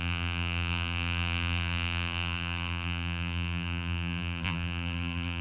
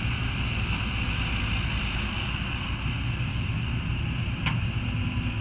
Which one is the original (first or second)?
second